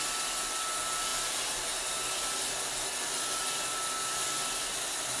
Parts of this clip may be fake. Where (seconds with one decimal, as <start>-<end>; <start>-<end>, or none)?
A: none